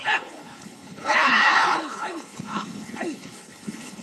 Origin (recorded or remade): remade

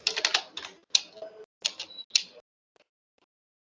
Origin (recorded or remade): recorded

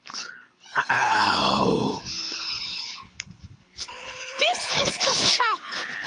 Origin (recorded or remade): remade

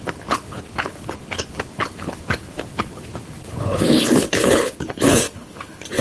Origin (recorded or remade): remade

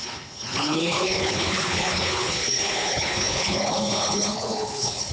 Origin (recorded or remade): remade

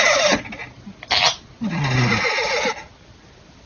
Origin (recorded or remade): recorded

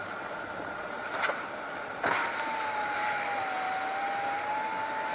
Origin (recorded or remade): recorded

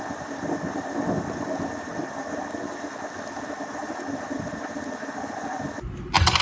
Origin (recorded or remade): recorded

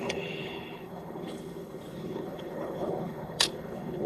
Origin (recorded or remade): remade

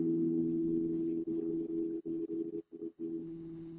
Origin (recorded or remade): remade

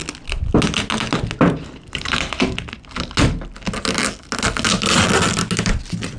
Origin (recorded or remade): recorded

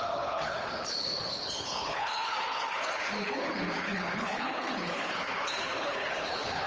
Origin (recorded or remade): remade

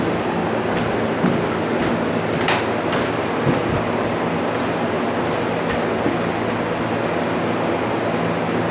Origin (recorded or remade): recorded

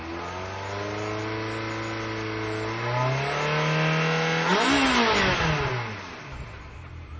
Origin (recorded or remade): recorded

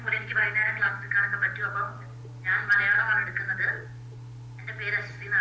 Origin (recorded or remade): recorded